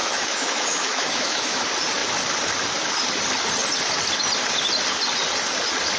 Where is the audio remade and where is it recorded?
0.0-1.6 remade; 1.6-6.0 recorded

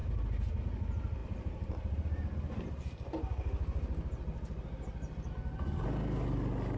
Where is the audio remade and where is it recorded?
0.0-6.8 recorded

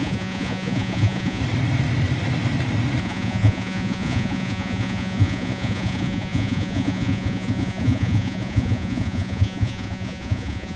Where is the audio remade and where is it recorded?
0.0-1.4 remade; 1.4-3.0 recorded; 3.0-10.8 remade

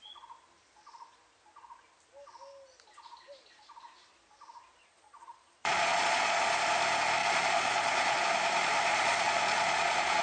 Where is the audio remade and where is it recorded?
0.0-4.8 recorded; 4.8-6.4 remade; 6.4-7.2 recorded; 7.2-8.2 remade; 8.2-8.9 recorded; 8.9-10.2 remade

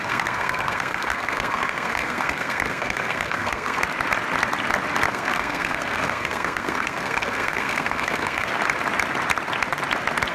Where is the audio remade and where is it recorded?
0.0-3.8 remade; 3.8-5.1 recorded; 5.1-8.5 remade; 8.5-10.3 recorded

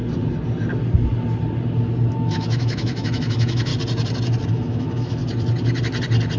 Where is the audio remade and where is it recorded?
0.0-2.1 recorded; 2.1-3.7 remade; 3.7-4.5 recorded; 4.5-5.2 remade; 5.2-6.4 recorded

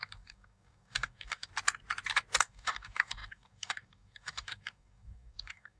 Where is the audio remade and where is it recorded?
0.0-1.5 remade; 1.5-2.4 recorded; 2.4-5.8 remade